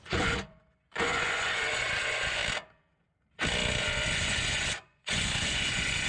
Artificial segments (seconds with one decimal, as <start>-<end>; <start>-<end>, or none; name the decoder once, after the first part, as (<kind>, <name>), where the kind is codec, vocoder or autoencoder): 0.0-2.4 (vocoder, Vocos); 3.8-6.1